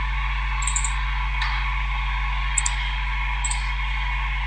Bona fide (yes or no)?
yes